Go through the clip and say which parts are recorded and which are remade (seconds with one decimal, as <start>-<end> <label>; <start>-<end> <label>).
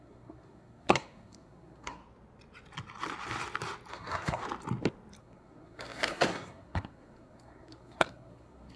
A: 0.0-2.0 remade; 2.0-3.9 recorded; 3.9-4.4 remade; 4.4-5.2 recorded; 5.2-8.8 remade